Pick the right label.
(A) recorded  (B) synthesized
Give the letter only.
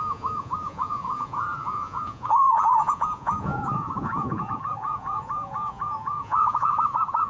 B